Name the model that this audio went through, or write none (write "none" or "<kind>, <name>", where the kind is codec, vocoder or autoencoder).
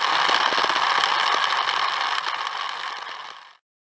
none